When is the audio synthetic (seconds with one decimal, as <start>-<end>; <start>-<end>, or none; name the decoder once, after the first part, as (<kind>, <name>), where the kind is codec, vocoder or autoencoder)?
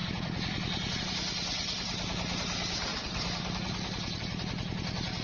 0.0-1.0 (vocoder, BigVGAN v2); 2.9-4.2